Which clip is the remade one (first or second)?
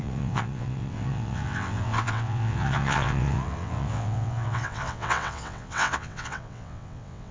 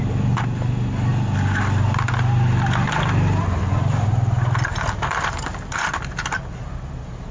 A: first